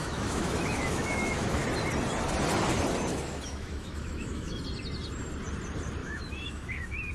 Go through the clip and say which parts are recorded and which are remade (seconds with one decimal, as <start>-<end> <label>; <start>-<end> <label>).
0.0-1.6 remade; 1.6-3.1 recorded; 3.1-4.6 remade; 4.6-6.0 recorded; 6.0-7.1 remade